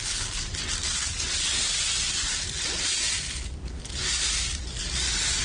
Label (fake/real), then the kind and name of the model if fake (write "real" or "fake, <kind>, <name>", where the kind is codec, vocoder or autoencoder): real